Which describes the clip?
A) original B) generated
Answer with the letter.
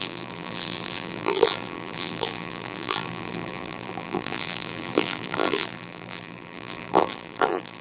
B